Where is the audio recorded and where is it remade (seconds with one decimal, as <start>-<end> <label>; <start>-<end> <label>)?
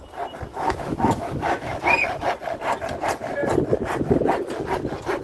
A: 0.0-0.5 recorded; 0.5-1.8 remade; 1.8-5.2 recorded